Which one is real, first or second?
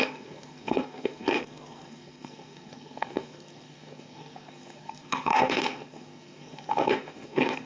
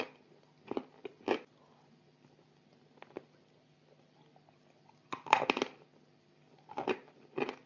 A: second